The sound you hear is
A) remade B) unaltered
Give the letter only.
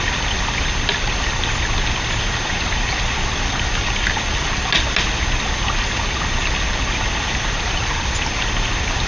B